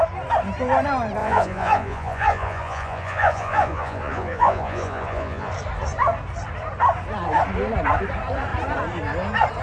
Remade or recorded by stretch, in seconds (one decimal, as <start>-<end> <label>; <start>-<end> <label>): 0.0-1.2 recorded; 1.2-5.5 remade; 5.5-9.6 recorded